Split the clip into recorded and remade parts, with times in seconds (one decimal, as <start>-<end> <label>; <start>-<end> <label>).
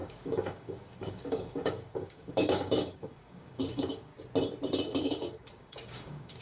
0.0-4.1 remade; 4.1-5.0 recorded; 5.0-6.4 remade